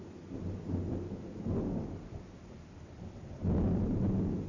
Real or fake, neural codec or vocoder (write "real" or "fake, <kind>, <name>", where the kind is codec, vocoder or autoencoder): real